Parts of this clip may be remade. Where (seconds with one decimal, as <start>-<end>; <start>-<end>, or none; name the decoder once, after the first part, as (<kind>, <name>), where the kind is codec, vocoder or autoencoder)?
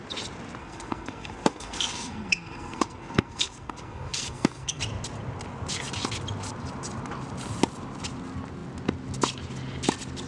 0.6-4.8 (codec, SNAC)